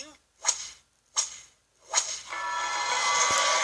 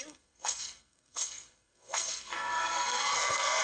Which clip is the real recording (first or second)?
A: first